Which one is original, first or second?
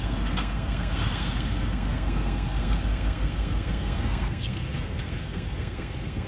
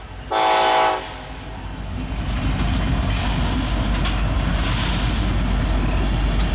second